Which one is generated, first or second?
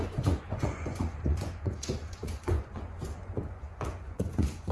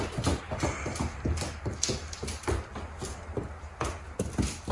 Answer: first